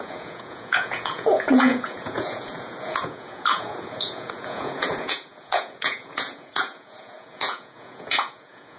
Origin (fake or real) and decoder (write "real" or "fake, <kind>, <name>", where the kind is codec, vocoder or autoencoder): fake, vocoder, Vocos